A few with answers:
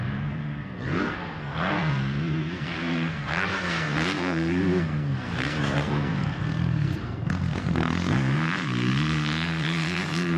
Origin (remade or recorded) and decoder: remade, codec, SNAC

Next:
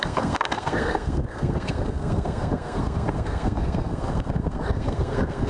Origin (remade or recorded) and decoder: remade, codec, SNAC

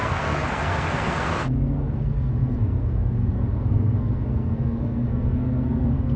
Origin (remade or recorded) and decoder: remade, codec, SNAC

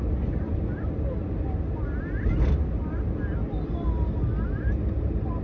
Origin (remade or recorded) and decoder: recorded